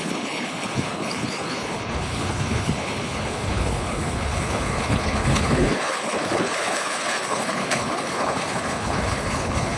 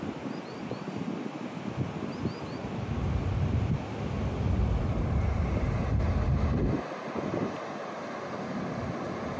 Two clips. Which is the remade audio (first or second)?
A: first